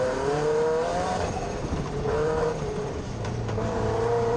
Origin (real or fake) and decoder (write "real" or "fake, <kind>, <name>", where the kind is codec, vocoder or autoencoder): fake, vocoder, BigVGAN v2